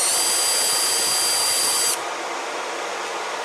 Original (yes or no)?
yes